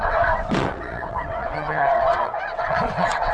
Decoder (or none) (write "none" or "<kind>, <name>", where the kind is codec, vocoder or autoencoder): vocoder, WaveNeXt